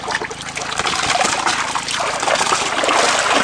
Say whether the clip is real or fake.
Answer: real